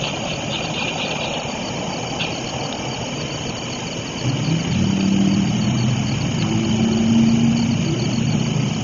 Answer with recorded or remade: recorded